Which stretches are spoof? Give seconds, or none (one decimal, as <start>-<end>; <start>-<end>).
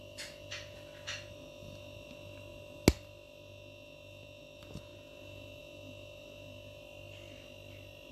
none